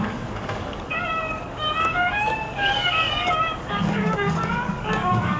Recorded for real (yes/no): no